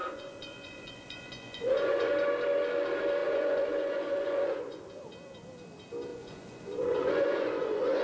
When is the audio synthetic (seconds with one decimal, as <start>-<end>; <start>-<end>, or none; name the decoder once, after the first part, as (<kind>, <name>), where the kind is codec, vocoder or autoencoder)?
0.0-2.1 (vocoder, Vocos); 3.2-4.8; 6.1-8.0